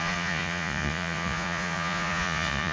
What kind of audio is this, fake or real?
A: fake